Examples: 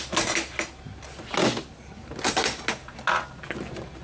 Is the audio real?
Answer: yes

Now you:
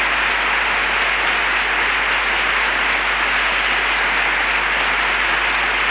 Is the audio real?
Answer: yes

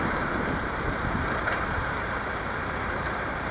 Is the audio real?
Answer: no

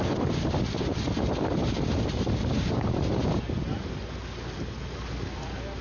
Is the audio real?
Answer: yes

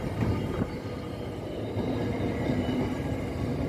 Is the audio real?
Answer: yes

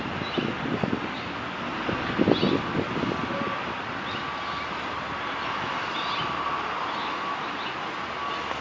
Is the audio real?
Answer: yes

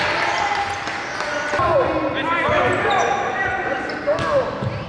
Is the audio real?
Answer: yes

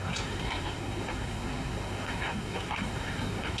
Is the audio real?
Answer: no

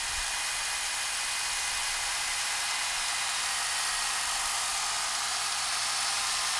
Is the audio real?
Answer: yes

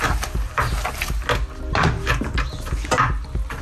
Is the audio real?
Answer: yes